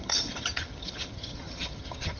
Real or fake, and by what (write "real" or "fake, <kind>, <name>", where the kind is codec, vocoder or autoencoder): fake, vocoder, HiFi-GAN